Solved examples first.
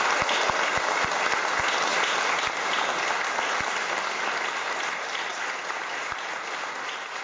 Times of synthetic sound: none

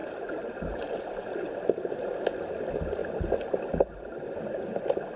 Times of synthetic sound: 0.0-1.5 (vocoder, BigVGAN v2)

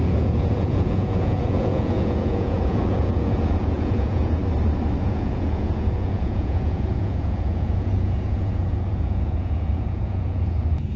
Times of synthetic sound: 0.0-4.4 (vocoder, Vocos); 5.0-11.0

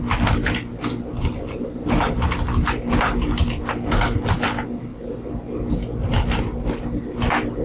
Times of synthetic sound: none